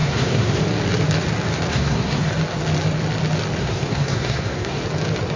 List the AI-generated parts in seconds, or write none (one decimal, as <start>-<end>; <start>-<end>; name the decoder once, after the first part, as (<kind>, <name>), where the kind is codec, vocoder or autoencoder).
0.0-0.6 (codec, SNAC); 1.7-2.3; 3.6-4.8